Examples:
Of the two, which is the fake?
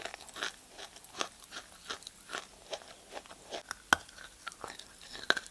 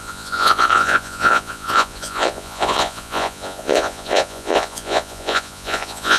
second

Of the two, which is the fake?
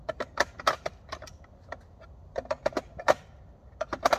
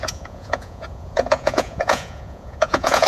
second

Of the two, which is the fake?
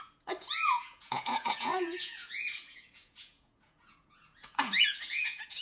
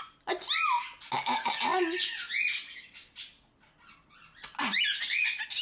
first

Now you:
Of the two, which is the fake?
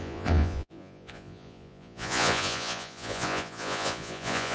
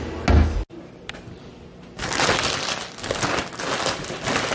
first